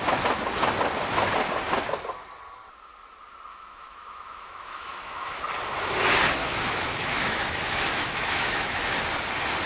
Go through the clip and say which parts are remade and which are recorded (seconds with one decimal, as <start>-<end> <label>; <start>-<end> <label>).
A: 0.0-3.5 recorded; 3.5-5.4 remade; 5.4-6.4 recorded; 6.4-8.8 remade; 8.8-9.7 recorded